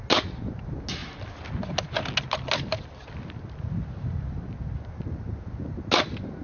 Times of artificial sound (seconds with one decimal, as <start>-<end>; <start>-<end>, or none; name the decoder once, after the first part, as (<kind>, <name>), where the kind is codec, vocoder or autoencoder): none